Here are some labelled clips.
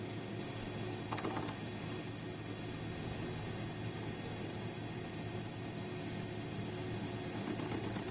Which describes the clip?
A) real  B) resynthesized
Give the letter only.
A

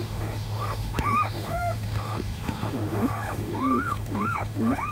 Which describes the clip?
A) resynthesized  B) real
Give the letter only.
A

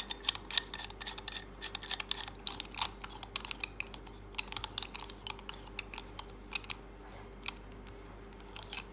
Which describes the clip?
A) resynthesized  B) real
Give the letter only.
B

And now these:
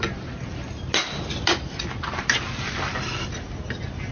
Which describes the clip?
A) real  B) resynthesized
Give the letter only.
A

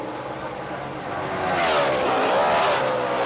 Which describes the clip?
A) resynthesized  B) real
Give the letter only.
B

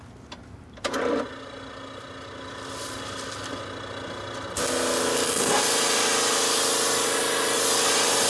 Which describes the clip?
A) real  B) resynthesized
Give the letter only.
A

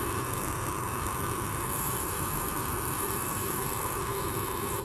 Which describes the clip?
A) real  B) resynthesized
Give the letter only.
B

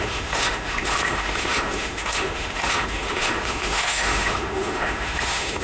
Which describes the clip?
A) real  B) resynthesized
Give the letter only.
B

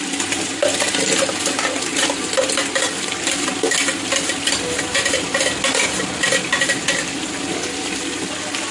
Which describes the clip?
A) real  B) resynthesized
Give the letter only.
A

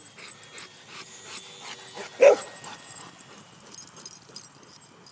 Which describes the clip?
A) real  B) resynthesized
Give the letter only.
A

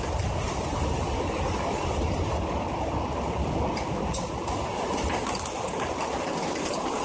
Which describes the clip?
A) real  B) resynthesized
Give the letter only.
A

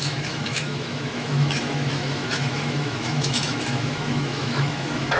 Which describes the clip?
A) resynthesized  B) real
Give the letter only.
A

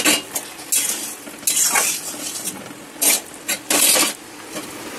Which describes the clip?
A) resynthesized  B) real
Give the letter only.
B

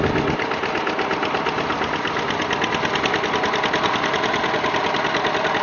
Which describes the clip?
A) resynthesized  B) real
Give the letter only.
B